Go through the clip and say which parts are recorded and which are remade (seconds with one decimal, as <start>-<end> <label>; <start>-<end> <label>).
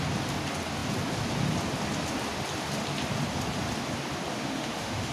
0.0-4.3 recorded; 4.3-5.1 remade